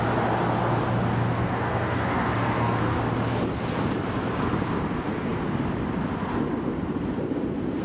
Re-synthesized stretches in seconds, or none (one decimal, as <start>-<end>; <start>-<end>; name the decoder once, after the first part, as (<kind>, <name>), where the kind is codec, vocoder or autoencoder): 1.3-3.0 (codec, SNAC)